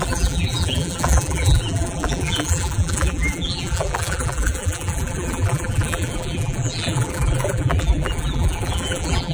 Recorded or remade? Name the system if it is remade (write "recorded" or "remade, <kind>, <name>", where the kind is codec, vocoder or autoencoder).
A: remade, vocoder, BigVGAN v2